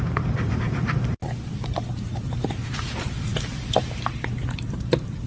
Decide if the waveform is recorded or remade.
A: remade